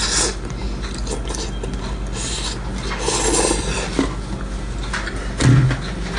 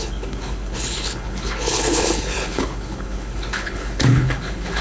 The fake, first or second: second